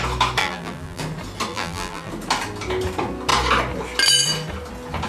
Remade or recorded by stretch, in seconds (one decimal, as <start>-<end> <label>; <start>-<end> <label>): 0.0-0.4 recorded; 0.4-1.0 remade; 1.0-1.5 recorded; 1.5-2.1 remade; 2.1-5.1 recorded